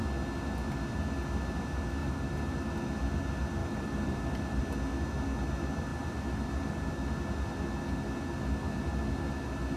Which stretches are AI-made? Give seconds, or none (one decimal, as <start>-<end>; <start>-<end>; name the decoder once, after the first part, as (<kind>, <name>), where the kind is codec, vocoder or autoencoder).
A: 2.0-2.7 (vocoder, BigVGAN v2); 3.6-4.6; 5.9-6.9